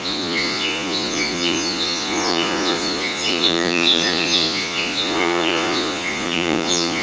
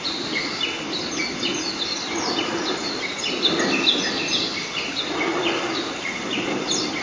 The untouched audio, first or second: second